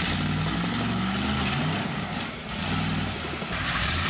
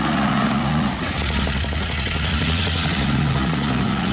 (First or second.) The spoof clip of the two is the second